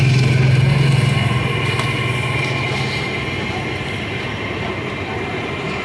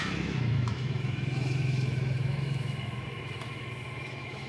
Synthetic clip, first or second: second